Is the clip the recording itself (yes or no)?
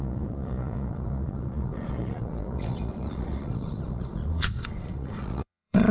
no